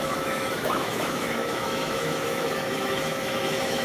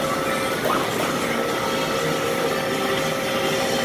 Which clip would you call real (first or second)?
second